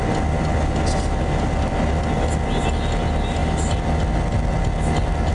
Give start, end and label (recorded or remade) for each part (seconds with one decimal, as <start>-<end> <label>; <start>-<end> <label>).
0.0-5.3 recorded